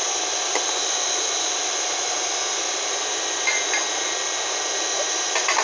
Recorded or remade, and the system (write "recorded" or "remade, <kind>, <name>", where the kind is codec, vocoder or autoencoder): recorded